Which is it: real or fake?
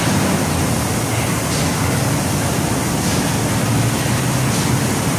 real